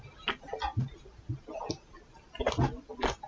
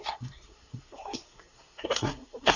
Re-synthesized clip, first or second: second